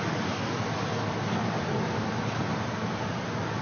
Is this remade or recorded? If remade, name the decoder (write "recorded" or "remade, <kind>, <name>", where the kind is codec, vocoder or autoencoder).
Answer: recorded